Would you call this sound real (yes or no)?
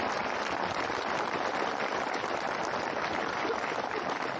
yes